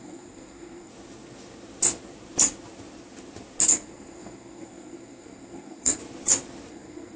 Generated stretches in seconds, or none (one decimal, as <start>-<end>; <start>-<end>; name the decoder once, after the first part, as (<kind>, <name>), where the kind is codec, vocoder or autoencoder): 0.0-0.9 (codec, SNAC); 3.7-6.0; 6.7-7.2